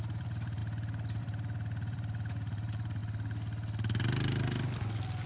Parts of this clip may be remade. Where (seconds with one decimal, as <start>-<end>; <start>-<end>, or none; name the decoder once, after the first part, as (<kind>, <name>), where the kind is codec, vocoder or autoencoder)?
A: 0.0-0.6 (vocoder, BigVGAN v2); 1.2-3.0